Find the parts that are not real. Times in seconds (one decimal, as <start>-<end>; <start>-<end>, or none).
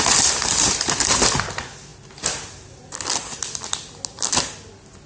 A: none